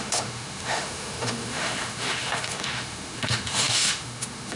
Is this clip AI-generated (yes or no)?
yes